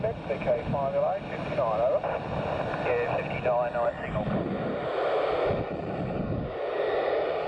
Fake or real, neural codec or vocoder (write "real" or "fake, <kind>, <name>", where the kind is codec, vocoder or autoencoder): real